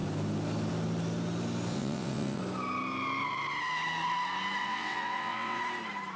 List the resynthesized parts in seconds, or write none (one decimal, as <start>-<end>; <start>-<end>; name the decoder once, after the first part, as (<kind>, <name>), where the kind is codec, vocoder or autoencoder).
1.7-2.4 (vocoder, WaveNeXt); 4.6-5.6